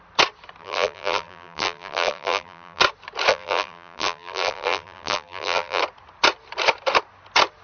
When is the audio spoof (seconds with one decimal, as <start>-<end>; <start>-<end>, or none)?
0.6-2.8; 3.3-5.8